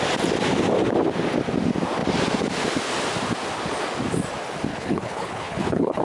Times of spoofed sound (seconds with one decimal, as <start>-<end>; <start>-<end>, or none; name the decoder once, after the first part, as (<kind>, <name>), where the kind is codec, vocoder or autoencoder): 4.7-6.0 (codec, HILCodec)